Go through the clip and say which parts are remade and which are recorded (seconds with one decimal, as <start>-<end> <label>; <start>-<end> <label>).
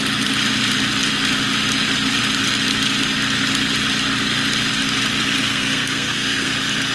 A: 0.0-5.5 recorded; 5.5-6.5 remade; 6.5-6.9 recorded